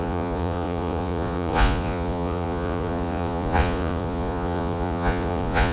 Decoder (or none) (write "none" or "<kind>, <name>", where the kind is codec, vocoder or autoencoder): vocoder, Vocos